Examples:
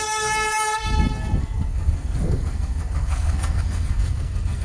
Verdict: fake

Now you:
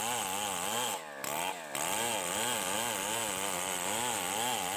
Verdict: real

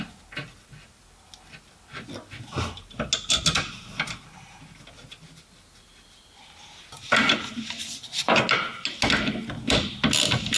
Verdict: real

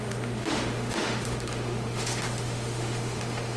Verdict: fake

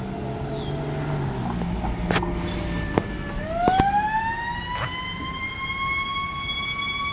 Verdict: real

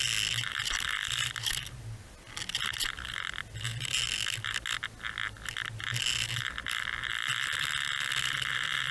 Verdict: real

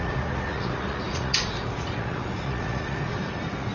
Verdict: fake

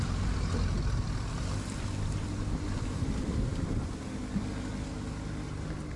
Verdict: real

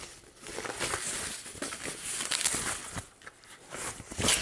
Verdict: real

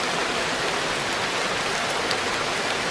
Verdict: fake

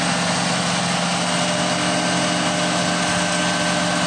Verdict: real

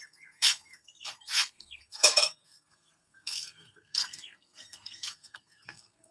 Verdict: fake